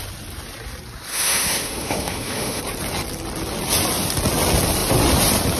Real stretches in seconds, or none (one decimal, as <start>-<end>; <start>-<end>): 0.0-1.1; 2.6-5.6